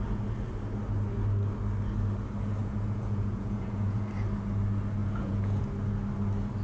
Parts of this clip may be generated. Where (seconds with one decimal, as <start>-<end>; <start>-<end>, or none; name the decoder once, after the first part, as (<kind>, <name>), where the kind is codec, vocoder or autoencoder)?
2.6-4.1 (vocoder, Vocos); 5.0-5.6